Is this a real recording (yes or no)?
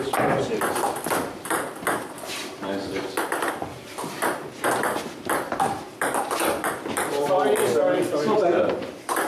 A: no